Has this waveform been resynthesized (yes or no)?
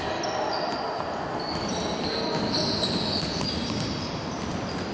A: no